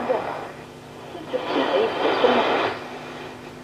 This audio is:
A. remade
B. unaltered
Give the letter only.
B